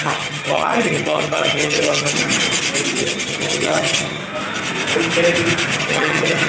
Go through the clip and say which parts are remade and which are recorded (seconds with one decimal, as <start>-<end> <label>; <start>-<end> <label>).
0.0-2.3 remade; 2.3-3.0 recorded; 3.0-4.2 remade; 4.2-5.8 recorded; 5.8-6.5 remade

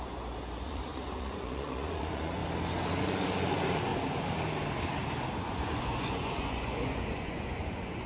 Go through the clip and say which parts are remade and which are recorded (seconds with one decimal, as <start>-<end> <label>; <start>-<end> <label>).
0.0-2.4 remade; 2.4-3.0 recorded; 3.0-3.9 remade; 3.9-5.4 recorded; 5.4-8.1 remade

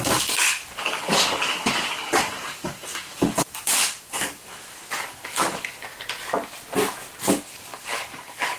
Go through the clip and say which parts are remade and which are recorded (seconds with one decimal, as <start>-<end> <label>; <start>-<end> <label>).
0.0-5.9 remade; 5.9-7.3 recorded; 7.3-8.6 remade

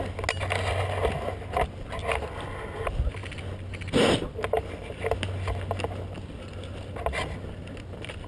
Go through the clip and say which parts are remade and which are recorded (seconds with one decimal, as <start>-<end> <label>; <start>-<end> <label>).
0.0-8.3 recorded

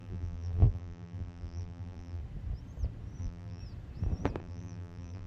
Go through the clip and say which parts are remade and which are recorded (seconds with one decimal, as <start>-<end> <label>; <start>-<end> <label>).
0.0-2.2 remade; 2.2-3.2 recorded; 3.2-3.6 remade; 3.6-4.4 recorded; 4.4-5.3 remade

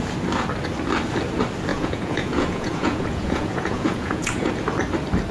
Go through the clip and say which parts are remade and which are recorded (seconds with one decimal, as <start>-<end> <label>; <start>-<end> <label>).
0.0-1.7 recorded; 1.7-4.5 remade; 4.5-5.3 recorded

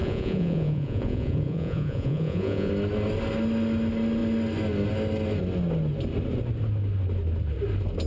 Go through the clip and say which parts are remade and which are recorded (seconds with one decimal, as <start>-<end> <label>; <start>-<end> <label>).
0.0-2.7 remade; 2.7-8.1 recorded